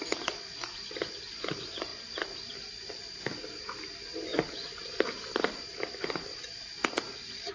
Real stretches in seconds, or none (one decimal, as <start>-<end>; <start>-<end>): 1.9-2.5